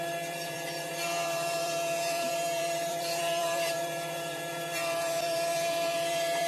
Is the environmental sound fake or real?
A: fake